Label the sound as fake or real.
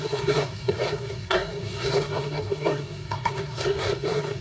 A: fake